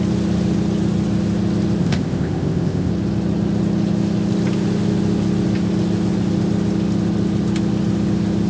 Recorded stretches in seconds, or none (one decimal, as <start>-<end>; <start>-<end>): 0.0-1.8; 2.9-8.5